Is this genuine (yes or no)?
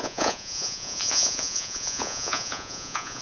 no